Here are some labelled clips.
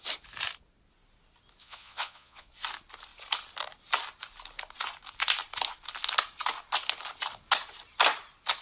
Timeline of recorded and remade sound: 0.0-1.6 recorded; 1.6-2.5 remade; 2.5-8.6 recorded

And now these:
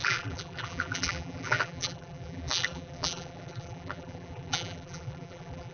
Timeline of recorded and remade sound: 0.0-5.7 remade

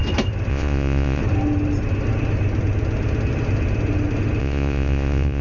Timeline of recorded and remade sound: 0.0-0.5 recorded; 0.5-1.2 remade; 1.2-4.4 recorded; 4.4-5.4 remade

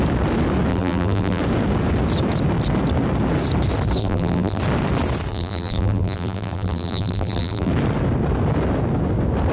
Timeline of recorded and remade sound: 0.0-0.7 recorded; 0.7-1.4 remade; 1.4-4.0 recorded; 4.0-4.6 remade; 4.6-5.3 recorded; 5.3-7.7 remade; 7.7-9.5 recorded

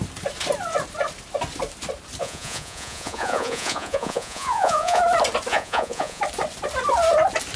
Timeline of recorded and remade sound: 0.0-2.2 recorded; 2.2-5.0 remade; 5.0-5.5 recorded; 5.5-6.2 remade; 6.2-7.6 recorded